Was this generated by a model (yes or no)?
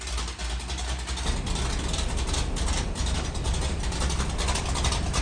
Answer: no